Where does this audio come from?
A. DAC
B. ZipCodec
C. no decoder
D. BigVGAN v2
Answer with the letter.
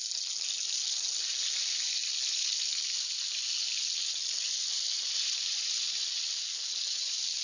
C